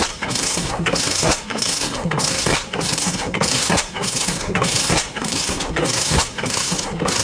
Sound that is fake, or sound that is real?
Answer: fake